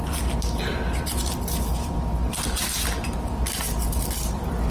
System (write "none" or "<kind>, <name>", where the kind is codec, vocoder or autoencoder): none